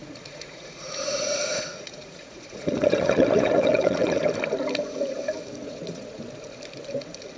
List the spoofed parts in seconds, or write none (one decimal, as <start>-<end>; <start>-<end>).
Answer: 0.0-4.2; 5.6-6.2